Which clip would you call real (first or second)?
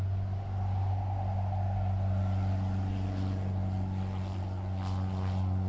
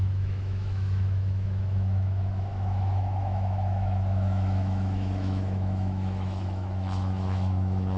first